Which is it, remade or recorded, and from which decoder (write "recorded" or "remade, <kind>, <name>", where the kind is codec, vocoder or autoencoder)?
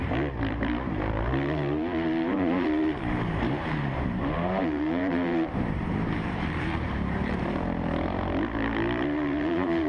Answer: remade, vocoder, BigVGAN v2